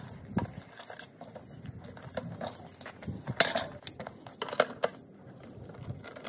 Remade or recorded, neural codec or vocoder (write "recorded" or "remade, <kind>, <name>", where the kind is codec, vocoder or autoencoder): recorded